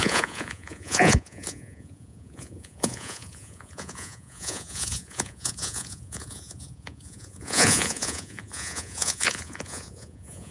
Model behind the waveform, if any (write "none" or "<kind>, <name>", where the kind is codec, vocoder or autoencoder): vocoder, Vocos